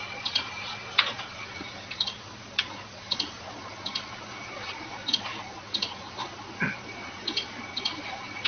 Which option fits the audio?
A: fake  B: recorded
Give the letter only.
A